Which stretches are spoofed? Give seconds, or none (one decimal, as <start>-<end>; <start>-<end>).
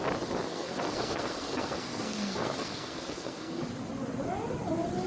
0.5-3.6